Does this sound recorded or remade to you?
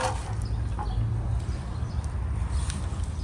recorded